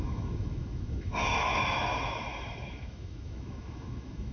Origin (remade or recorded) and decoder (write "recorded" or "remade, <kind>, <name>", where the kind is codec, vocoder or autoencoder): remade, autoencoder, DAC-VAE